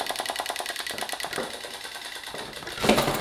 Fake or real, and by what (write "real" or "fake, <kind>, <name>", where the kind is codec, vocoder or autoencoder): real